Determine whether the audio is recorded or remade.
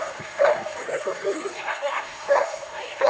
remade